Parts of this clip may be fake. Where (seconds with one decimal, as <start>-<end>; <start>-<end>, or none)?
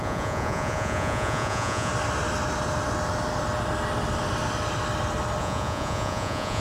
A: 0.0-1.9; 5.4-6.6